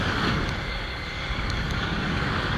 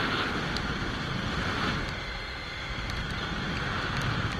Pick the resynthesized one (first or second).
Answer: first